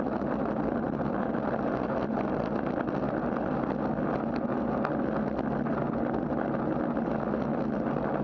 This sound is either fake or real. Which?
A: real